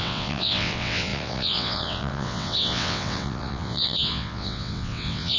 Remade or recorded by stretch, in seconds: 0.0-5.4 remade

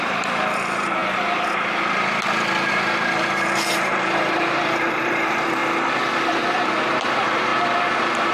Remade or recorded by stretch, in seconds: 0.0-1.0 remade; 1.0-2.7 recorded; 2.7-5.6 remade; 5.6-6.3 recorded; 6.3-7.5 remade; 7.5-8.3 recorded

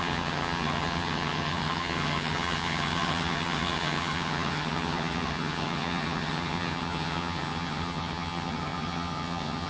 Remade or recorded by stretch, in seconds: 0.0-9.7 remade

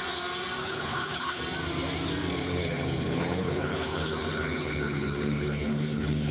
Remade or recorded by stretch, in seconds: 0.0-0.6 recorded; 0.6-1.4 remade; 1.4-2.4 recorded; 2.4-6.3 remade

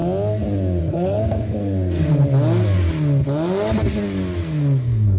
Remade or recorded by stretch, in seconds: 0.0-0.8 recorded; 0.8-2.1 remade; 2.1-4.4 recorded; 4.4-5.2 remade